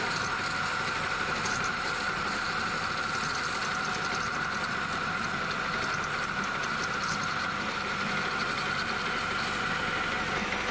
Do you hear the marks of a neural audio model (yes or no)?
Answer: no